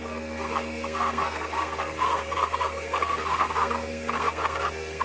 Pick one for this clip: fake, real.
fake